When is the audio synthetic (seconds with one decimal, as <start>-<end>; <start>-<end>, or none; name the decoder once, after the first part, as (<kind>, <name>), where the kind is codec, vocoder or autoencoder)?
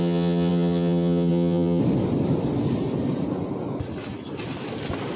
0.0-1.8 (vocoder, HiFi-GAN)